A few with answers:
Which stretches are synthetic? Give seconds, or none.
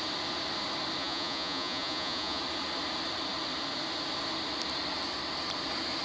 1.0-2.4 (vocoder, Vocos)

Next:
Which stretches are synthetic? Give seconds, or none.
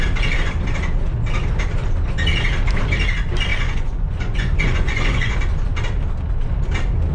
3.5-5.3 (vocoder, Vocos)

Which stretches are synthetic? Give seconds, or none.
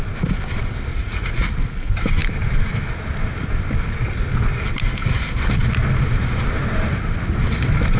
0.9-1.5 (vocoder, Vocos)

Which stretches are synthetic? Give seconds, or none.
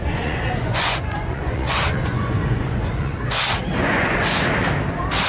0.0-3.2 (vocoder, Vocos); 3.8-4.4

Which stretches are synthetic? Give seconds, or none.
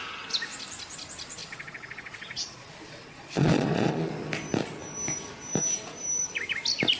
1.4-4.1 (vocoder, Vocos)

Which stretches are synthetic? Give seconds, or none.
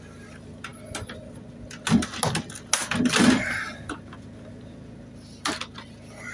none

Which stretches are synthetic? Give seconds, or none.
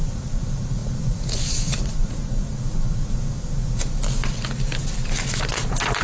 0.0-3.8 (vocoder, Vocos)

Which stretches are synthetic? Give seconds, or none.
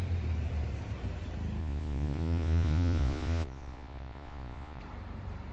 1.6-4.8 (vocoder, Vocos)